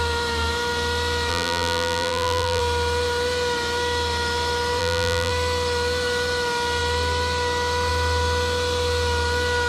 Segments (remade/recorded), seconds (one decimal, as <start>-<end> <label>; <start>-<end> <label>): 0.0-1.3 recorded; 1.3-2.6 remade; 2.6-4.8 recorded; 4.8-5.3 remade; 5.3-9.7 recorded